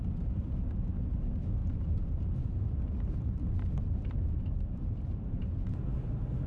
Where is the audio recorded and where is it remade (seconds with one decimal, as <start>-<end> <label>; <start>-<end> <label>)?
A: 0.0-1.6 recorded; 1.6-5.5 remade; 5.5-6.5 recorded